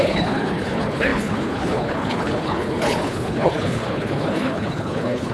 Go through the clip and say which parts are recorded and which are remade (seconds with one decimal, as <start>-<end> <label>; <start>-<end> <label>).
0.0-5.3 remade